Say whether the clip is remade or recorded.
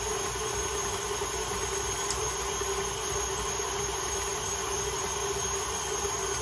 recorded